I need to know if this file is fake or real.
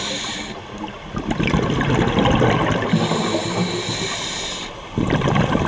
real